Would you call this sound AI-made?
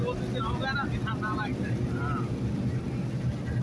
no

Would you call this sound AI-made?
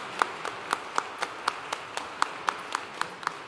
no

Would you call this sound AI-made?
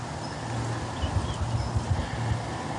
no